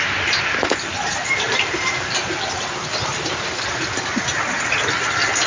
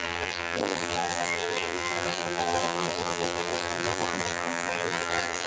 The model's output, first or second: second